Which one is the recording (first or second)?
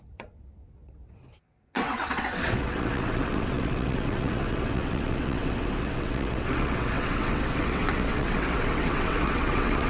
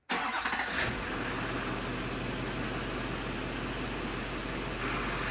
second